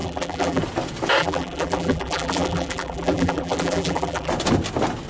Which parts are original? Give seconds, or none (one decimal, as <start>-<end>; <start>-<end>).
0.6-1.2; 4.3-5.1